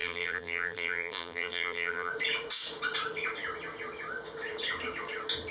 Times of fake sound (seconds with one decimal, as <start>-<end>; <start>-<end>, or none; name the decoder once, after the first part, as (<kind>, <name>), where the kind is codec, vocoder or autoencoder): 0.0-2.1 (vocoder, BigVGAN v2)